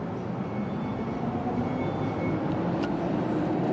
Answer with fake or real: real